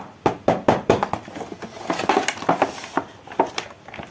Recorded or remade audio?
recorded